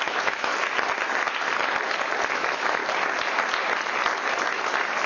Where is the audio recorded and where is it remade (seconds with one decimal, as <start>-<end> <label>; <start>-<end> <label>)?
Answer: 0.0-0.5 remade; 0.5-2.3 recorded; 2.3-2.8 remade; 2.8-5.1 recorded